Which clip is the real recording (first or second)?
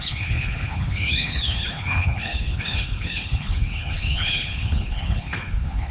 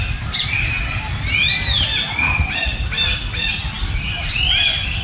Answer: second